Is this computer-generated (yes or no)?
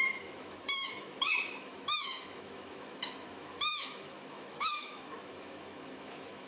yes